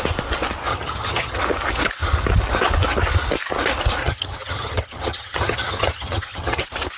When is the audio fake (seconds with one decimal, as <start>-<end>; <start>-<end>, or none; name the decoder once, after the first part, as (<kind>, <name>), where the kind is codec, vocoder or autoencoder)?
0.7-1.4 (vocoder, HiFi-GAN); 4.0-6.6